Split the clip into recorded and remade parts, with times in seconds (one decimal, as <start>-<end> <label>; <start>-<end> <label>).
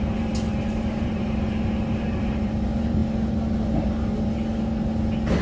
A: 0.0-3.0 remade; 3.0-5.4 recorded